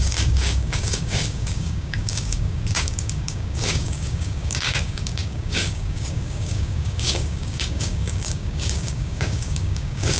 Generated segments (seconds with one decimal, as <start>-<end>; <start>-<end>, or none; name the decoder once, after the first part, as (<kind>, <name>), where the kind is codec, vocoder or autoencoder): 0.0-10.2 (codec, DAC)

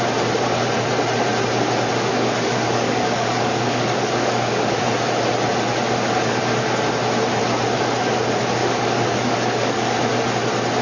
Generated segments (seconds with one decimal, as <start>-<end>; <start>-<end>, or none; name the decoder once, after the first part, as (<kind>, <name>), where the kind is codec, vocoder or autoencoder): 2.1-4.8 (codec, DAC); 8.6-9.9

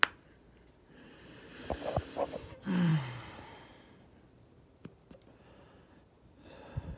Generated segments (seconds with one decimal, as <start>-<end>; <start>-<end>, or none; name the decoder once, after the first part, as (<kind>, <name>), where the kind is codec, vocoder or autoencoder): none

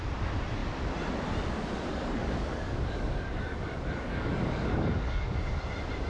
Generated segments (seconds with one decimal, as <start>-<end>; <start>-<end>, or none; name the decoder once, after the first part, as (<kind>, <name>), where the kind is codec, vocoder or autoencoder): 1.9-5.6 (codec, DAC)

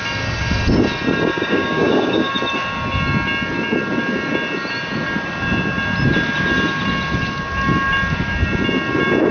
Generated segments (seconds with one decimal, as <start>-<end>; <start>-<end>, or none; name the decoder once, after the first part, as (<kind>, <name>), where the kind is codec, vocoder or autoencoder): 1.3-2.3 (codec, DAC)

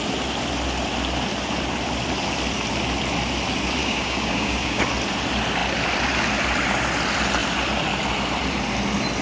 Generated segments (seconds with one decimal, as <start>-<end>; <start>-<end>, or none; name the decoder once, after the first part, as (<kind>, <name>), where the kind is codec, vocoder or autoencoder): 3.8-4.8 (codec, DAC)